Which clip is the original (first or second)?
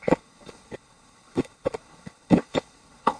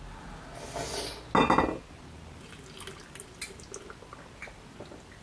second